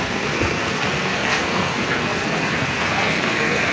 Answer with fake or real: fake